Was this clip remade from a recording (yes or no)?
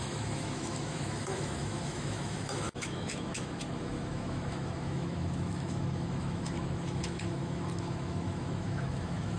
yes